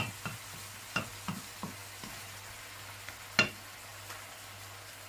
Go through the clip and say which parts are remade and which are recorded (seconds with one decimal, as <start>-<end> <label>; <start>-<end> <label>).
0.0-5.1 recorded